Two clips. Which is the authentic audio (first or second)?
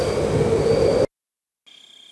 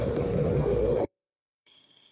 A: first